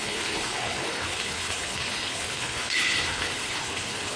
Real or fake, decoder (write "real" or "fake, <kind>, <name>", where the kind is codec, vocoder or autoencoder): fake, codec, HILCodec